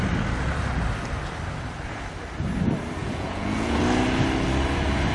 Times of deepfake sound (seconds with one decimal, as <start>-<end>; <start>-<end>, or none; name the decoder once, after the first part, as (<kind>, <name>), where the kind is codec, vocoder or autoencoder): 3.0-3.8 (vocoder, Vocos)